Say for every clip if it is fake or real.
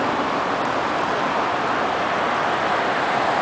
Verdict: real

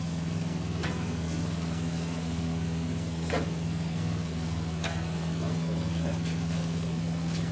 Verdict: fake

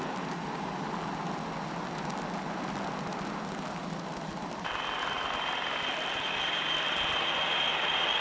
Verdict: real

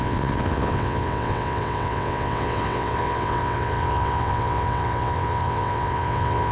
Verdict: fake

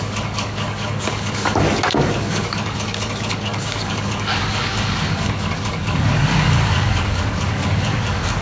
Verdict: fake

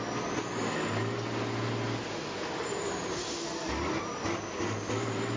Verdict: real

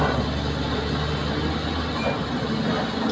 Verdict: real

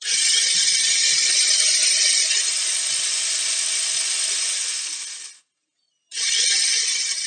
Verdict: fake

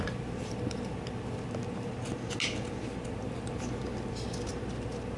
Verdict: real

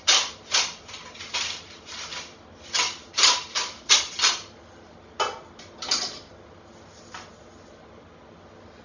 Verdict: real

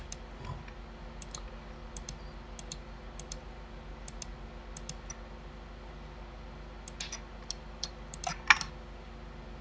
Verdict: real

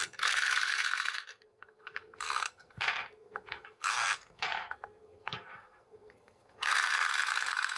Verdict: fake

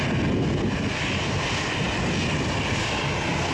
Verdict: real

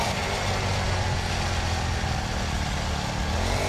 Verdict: real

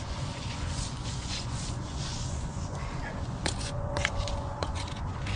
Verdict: fake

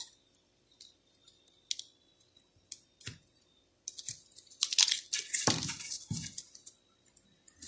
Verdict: real